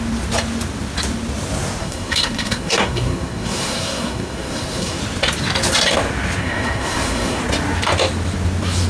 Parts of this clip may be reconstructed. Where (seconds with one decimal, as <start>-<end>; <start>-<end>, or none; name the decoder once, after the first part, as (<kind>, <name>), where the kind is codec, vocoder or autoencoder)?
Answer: 1.8-5.0 (codec, SNAC); 6.4-7.4